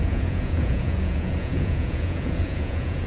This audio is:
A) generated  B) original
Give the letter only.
A